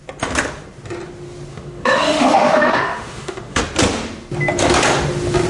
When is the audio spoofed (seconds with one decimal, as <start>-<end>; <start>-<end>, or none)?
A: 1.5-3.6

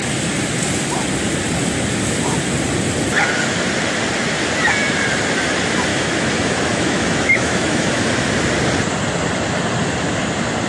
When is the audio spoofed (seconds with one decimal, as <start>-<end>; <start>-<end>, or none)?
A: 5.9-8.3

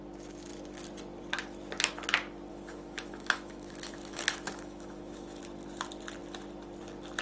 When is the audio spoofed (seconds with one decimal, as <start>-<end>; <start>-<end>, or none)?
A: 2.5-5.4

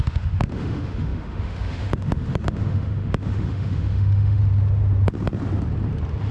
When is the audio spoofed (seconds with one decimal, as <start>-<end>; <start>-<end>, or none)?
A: 0.0-4.4